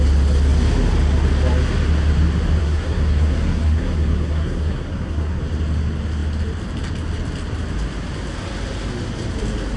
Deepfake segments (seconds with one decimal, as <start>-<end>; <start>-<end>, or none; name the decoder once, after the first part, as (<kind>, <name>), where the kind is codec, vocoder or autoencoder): 2.6-5.4 (codec, SNAC)